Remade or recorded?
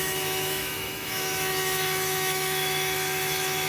remade